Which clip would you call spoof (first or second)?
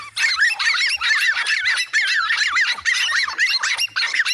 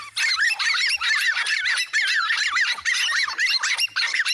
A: second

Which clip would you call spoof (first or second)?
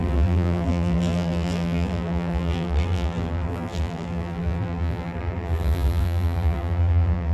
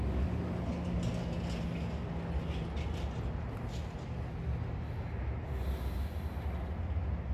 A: first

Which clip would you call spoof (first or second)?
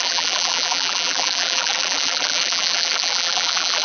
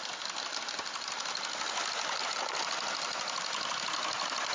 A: first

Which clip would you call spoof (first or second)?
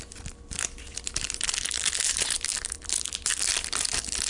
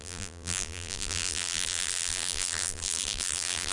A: second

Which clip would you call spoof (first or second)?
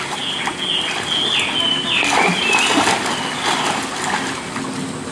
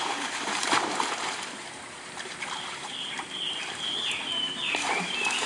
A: second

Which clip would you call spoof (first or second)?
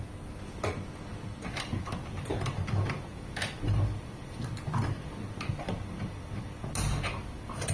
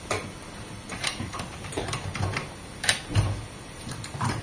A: second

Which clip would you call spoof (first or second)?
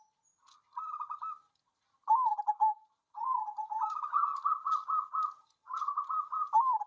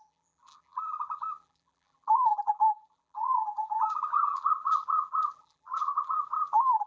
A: second